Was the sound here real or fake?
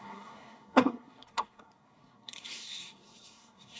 fake